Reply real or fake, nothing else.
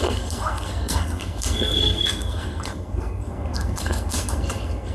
fake